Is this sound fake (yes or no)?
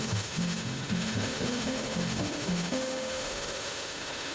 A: yes